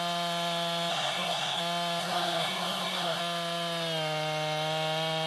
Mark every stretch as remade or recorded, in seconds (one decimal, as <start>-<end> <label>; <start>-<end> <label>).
0.0-0.9 recorded; 0.9-1.6 remade; 1.6-2.0 recorded; 2.0-3.2 remade; 3.2-5.3 recorded